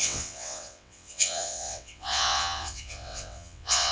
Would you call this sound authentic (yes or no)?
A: no